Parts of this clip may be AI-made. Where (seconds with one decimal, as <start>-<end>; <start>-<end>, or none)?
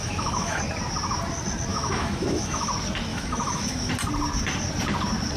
0.0-0.6; 1.7-2.7; 3.1-3.9